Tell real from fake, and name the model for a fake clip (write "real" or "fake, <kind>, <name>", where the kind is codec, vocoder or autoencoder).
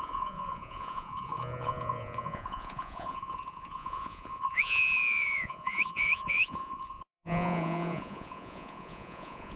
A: fake, vocoder, Vocos